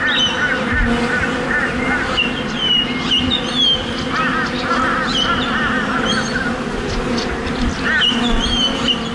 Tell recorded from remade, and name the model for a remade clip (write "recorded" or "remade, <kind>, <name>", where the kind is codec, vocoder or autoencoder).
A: recorded